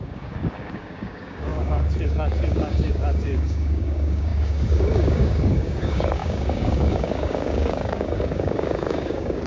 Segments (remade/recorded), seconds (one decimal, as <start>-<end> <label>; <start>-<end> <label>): 0.0-9.5 remade